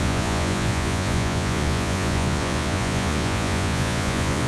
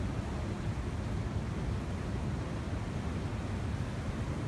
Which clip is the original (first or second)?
second